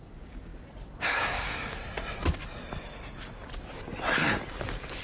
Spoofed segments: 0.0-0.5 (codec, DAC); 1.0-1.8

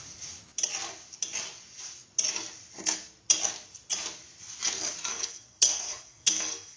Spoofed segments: 5.1-6.8 (codec, SNAC)

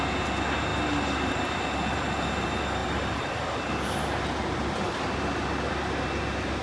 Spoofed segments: 2.8-3.7 (vocoder, BigVGAN v2)

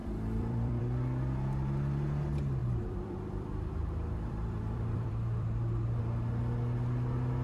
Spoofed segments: 0.0-0.8 (vocoder, BigVGAN v2); 2.6-6.0

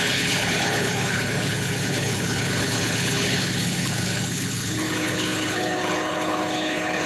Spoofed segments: 0.0-7.1 (codec, HILCodec)